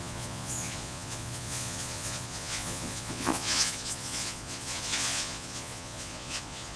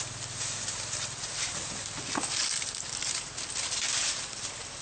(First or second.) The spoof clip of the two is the first